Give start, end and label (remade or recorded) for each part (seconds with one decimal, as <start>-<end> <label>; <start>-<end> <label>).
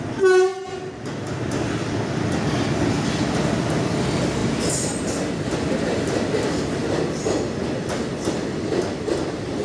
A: 0.0-9.6 recorded